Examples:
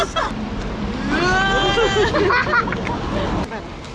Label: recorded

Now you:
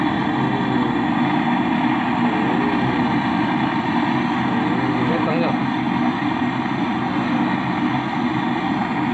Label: recorded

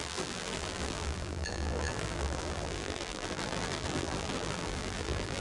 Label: remade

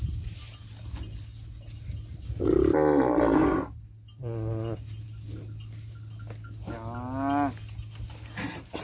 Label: recorded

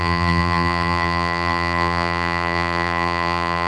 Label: remade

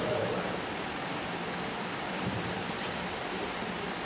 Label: remade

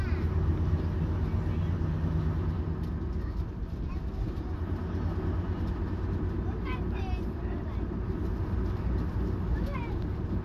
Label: recorded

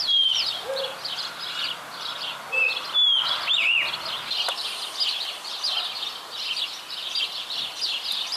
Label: recorded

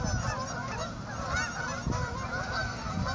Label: recorded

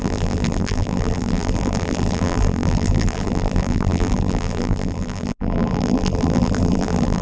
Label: remade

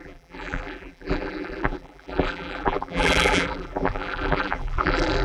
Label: remade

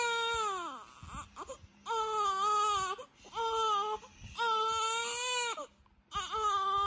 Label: recorded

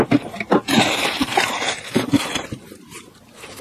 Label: remade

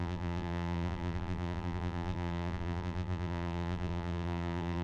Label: remade